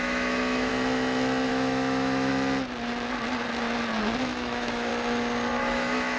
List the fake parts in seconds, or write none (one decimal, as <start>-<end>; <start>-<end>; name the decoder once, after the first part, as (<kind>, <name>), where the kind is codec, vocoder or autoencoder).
0.0-0.7 (autoencoder, DAC-VAE); 1.5-2.3; 4.2-4.9; 5.6-6.2

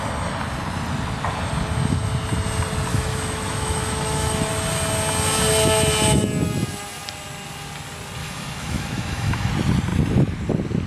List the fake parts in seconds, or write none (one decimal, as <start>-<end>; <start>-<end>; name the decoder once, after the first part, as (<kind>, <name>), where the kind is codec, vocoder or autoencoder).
2.9-4.5 (autoencoder, DAC-VAE); 8.2-9.5

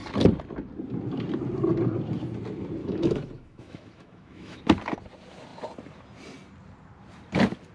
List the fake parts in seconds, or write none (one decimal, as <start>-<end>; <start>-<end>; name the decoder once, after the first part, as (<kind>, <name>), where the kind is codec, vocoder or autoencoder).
2.8-4.6 (autoencoder, DAC-VAE)

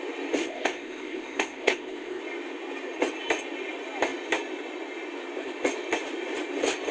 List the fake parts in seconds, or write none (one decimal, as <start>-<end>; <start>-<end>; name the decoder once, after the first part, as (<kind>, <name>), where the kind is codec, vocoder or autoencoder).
0.4-2.2 (codec, ZipCodec)

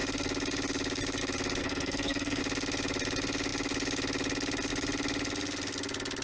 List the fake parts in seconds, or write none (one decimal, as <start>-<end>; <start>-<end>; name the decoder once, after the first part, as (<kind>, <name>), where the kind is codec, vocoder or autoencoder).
1.6-2.4 (codec, SNAC)

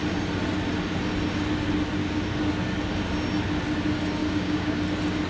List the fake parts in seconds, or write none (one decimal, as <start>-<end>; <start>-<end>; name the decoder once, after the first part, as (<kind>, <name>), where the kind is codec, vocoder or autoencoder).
2.0-2.5 (codec, DAC); 4.2-4.8